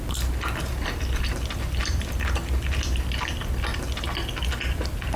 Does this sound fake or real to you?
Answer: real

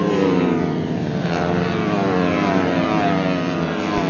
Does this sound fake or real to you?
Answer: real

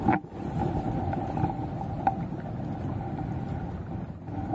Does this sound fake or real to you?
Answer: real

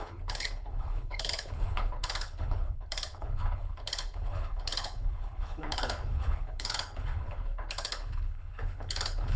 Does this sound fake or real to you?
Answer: fake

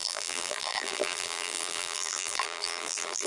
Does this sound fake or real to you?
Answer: fake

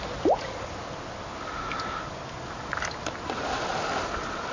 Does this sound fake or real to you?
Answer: real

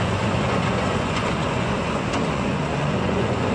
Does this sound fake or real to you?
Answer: fake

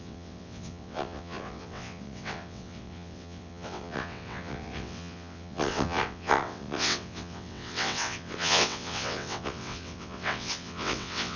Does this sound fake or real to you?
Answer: fake